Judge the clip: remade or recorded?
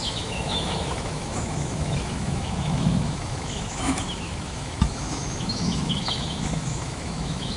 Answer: remade